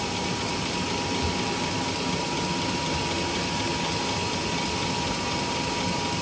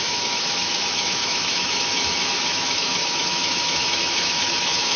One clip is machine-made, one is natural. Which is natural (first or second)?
first